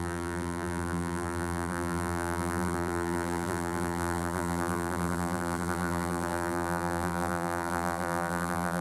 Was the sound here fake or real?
fake